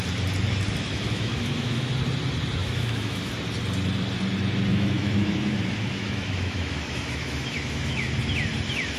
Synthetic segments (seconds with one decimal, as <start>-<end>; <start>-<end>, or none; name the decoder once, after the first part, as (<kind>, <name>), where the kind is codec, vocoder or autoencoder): 0.9-1.9 (autoencoder, DAC-VAE); 2.6-3.3; 4.7-8.1